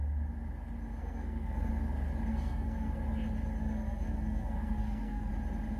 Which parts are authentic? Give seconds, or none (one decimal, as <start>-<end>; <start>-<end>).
0.0-1.0; 1.7-2.3; 3.0-3.6; 5.3-5.8